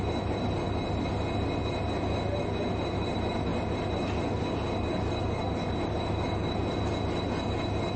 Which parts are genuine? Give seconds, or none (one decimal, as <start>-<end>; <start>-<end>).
0.0-8.0